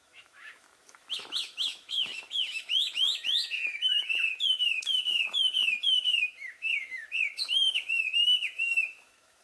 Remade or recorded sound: remade